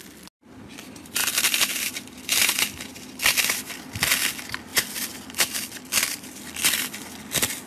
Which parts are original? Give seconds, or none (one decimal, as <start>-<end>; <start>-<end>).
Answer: 0.0-1.2; 3.9-4.7; 5.8-7.7